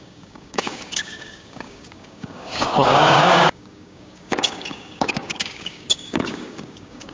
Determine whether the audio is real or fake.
fake